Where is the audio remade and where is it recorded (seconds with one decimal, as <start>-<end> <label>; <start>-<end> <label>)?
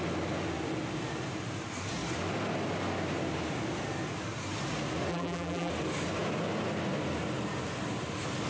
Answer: 0.0-5.1 recorded; 5.1-5.7 remade; 5.7-8.5 recorded